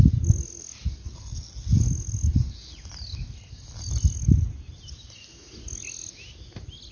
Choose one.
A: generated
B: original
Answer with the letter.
B